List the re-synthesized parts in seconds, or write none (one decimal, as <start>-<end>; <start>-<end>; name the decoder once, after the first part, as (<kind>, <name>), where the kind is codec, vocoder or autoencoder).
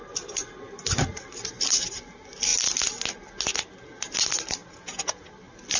4.6-5.3 (vocoder, Vocos)